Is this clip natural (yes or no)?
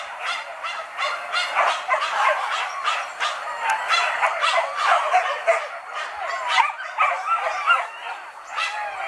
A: yes